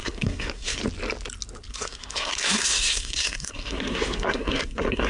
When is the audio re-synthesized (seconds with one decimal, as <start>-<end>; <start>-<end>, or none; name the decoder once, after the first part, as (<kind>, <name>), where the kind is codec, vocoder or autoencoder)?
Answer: 0.0-0.8 (codec, SNAC); 1.7-5.1